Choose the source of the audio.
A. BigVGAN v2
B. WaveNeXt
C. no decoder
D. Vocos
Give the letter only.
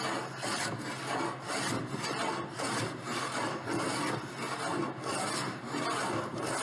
C